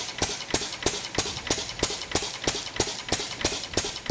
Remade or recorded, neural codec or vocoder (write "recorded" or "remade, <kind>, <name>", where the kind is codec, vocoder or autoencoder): recorded